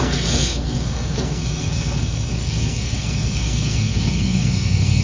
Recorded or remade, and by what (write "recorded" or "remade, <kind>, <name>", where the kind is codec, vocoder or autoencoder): remade, codec, SNAC